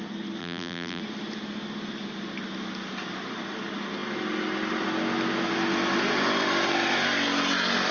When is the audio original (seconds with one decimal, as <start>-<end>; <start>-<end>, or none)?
0.0-0.4; 1.0-7.9